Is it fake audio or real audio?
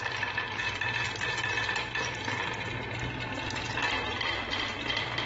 fake